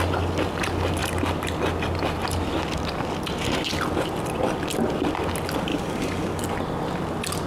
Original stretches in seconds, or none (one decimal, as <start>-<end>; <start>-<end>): 0.0-5.7; 6.4-7.5